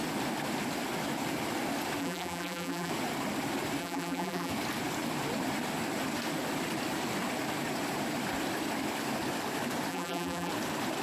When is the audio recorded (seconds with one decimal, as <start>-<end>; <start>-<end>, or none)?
0.0-2.0; 2.9-3.8; 4.5-9.9; 10.5-11.0